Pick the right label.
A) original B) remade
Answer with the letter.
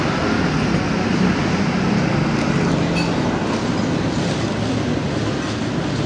A